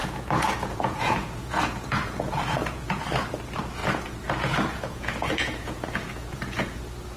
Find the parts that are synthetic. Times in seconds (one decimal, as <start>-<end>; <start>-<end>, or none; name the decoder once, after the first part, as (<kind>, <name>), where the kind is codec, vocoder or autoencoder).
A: 0.0-3.0 (vocoder, Vocos); 3.8-6.8